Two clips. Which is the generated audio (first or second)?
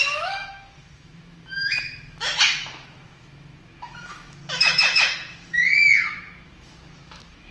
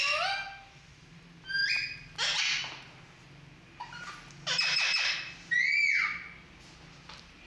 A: first